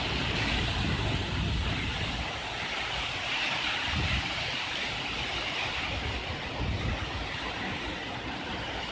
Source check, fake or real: real